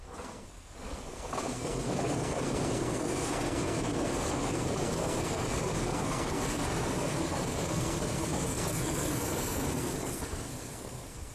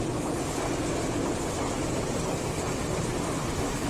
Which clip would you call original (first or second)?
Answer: second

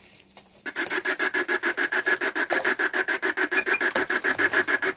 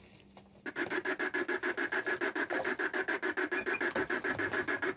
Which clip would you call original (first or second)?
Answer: second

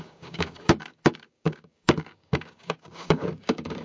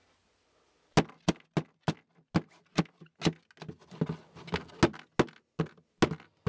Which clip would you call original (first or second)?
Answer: second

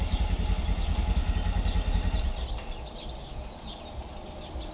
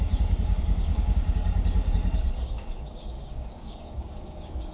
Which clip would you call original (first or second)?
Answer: first